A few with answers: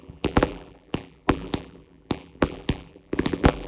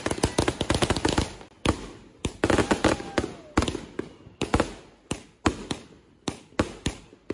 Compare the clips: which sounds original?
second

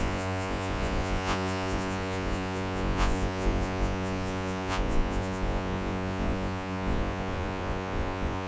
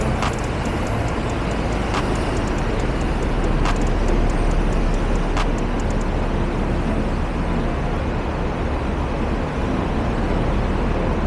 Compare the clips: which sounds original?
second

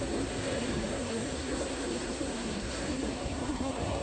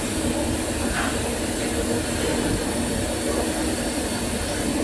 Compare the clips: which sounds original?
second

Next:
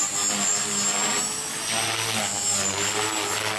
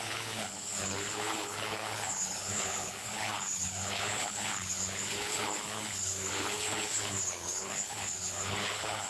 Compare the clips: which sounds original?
first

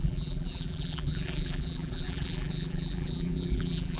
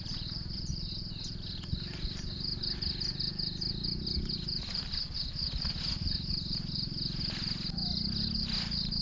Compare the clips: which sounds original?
second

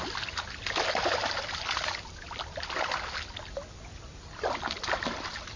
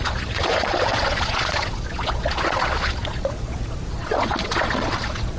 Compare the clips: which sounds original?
first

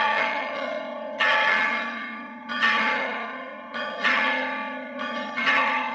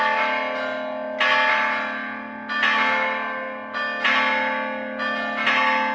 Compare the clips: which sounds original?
second